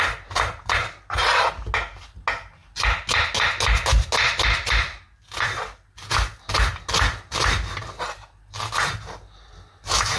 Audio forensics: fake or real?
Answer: real